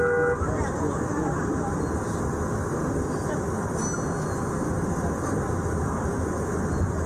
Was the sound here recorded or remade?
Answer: recorded